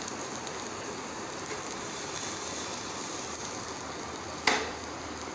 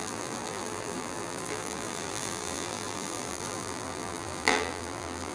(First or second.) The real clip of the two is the first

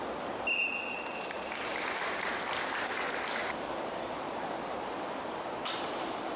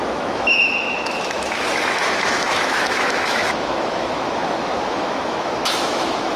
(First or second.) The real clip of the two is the first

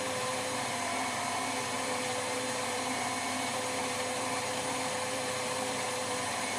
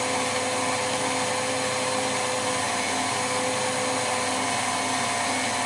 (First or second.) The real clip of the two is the second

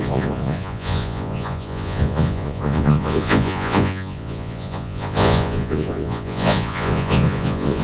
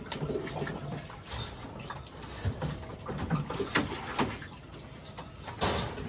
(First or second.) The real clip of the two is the second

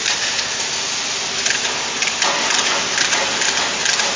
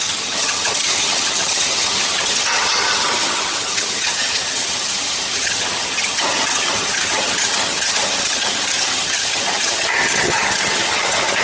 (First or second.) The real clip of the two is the first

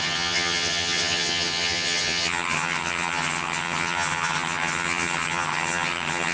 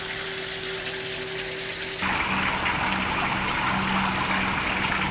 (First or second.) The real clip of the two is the second